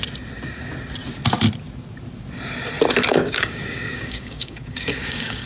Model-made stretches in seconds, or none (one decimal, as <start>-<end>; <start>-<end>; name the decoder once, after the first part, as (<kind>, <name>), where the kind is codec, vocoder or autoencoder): 3.1-5.5 (codec, DAC)